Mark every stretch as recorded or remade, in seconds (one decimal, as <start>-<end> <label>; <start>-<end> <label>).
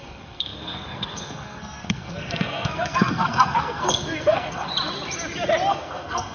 0.0-4.7 remade; 4.7-5.7 recorded; 5.7-6.3 remade